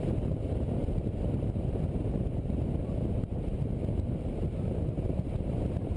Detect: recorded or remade remade